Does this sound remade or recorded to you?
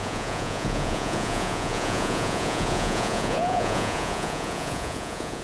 remade